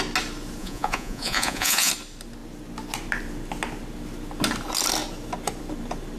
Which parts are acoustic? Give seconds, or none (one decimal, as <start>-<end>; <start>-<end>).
0.0-0.6; 1.9-6.2